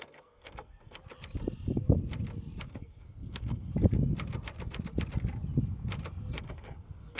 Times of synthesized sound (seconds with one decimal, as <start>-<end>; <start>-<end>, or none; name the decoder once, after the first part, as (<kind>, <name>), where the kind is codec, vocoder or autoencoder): 0.0-1.0 (codec, SNAC); 2.7-3.7; 6.4-7.2